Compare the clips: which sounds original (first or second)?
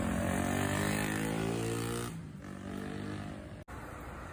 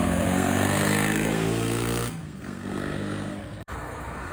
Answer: first